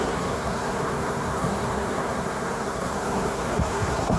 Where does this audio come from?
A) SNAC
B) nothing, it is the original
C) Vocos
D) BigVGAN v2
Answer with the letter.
A